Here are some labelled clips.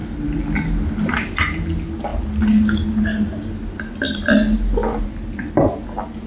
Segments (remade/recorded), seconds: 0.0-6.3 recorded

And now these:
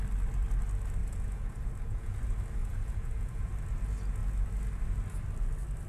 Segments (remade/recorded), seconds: 0.0-1.0 recorded; 1.0-2.2 remade; 2.2-2.6 recorded; 2.6-3.5 remade; 3.5-5.9 recorded

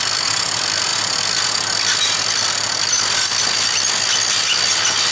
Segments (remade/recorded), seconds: 0.0-5.1 recorded

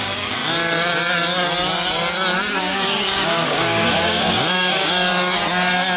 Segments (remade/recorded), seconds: 0.0-0.4 remade; 0.4-2.6 recorded; 2.6-5.1 remade; 5.1-6.0 recorded

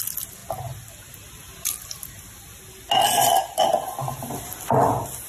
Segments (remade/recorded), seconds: 0.0-5.3 recorded